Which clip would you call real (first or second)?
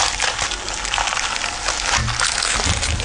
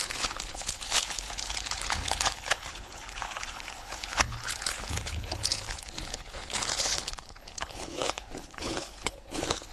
first